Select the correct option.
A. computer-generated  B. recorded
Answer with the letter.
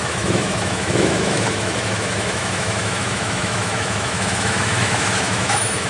A